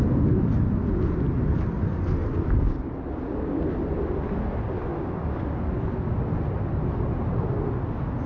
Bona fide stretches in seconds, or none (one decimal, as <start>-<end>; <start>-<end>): 0.0-2.2; 3.5-4.9; 5.6-8.3